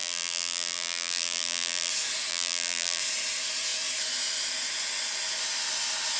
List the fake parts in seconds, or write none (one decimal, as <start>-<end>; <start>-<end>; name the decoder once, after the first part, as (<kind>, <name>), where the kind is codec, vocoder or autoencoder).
0.0-1.9 (vocoder, BigVGAN v2); 2.3-3.0